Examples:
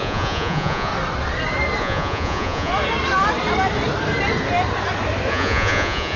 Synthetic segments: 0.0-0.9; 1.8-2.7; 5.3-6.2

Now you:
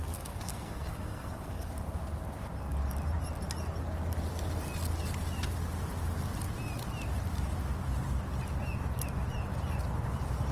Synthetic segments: 0.0-1.7

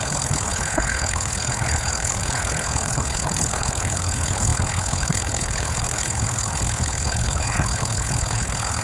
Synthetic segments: 0.0-8.8

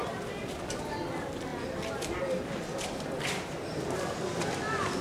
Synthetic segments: 0.0-0.9